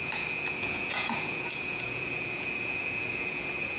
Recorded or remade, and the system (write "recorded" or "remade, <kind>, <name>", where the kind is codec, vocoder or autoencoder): remade, vocoder, Vocos